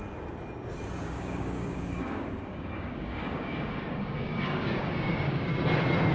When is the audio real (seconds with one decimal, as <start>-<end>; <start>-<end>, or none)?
0.0-1.0; 5.5-6.1